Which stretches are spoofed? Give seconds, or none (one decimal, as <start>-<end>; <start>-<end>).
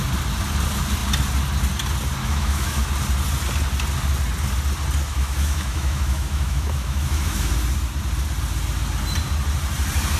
2.2-2.9; 5.1-7.5